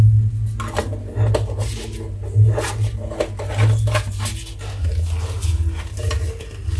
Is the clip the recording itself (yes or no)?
yes